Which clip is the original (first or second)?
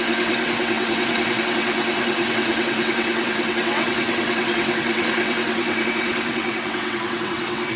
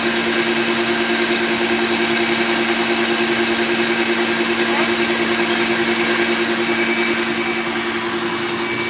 second